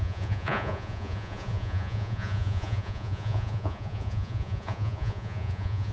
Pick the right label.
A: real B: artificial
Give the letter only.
B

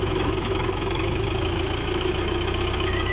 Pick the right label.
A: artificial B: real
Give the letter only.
A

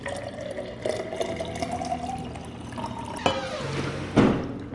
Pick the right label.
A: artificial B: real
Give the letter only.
B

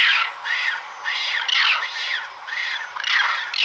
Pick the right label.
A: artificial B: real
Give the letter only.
B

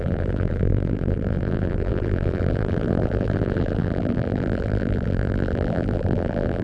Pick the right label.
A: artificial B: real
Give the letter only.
A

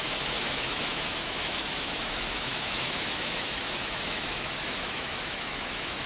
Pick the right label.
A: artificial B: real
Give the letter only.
A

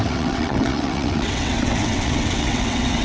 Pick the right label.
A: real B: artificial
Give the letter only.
B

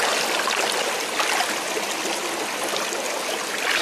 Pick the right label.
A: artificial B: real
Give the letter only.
B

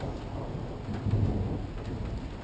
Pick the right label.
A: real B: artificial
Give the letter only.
A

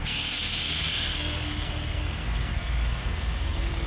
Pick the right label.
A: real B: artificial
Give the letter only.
B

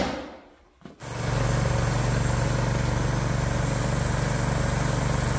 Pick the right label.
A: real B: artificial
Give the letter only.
A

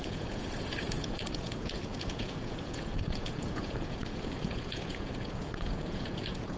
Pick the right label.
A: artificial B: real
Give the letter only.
A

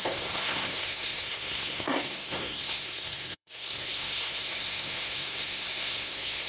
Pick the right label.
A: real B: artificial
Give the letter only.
B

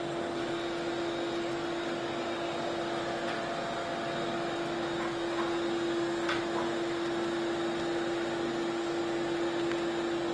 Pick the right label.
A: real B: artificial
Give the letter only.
A